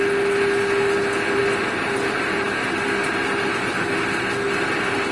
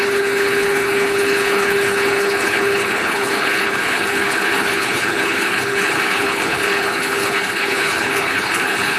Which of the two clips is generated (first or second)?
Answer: second